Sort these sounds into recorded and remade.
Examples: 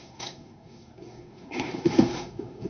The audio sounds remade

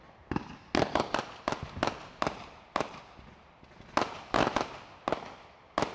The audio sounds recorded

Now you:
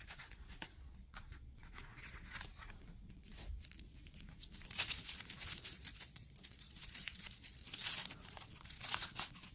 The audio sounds remade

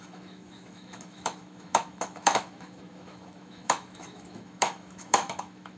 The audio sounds remade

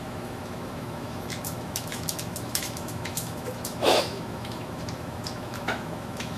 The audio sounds remade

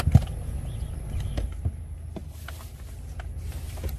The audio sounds recorded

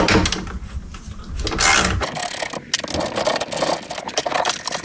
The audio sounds recorded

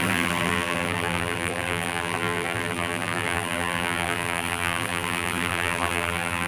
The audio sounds remade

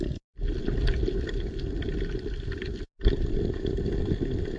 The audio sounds recorded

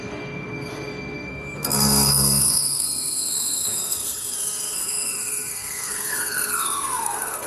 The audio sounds remade